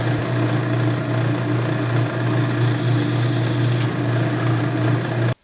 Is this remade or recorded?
recorded